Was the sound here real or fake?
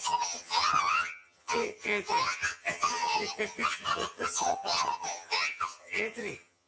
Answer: fake